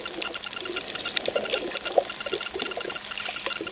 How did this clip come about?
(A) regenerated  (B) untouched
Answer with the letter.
B